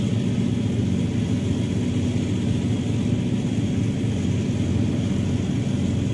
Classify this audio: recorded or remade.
recorded